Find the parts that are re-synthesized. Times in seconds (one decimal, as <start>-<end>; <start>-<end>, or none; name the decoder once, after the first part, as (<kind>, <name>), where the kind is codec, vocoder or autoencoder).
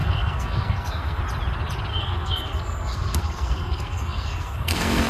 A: 0.0-1.2 (codec, SNAC); 1.9-5.1